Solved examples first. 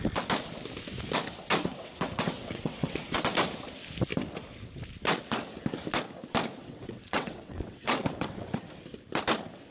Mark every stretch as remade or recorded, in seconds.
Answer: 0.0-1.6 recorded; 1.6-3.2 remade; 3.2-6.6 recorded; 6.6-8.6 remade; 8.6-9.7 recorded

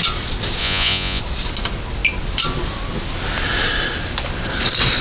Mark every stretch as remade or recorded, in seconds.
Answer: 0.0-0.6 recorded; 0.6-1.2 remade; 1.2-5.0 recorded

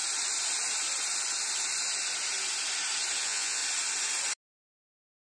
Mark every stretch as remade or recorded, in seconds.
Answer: 0.0-3.2 recorded; 3.2-3.6 remade; 3.6-5.3 recorded

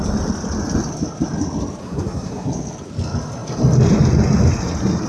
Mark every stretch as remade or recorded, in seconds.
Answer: 0.0-1.8 recorded; 1.8-2.5 remade; 2.5-5.1 recorded

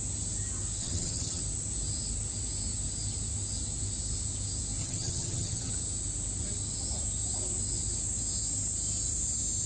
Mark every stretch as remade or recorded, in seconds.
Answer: 0.0-0.8 recorded; 0.8-1.4 remade; 1.4-4.8 recorded; 4.8-5.7 remade; 5.7-9.7 recorded

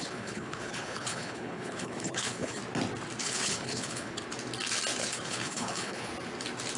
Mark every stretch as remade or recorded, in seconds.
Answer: 0.0-2.6 remade; 2.6-3.2 recorded; 3.2-4.2 remade; 4.2-5.0 recorded; 5.0-6.1 remade; 6.1-6.8 recorded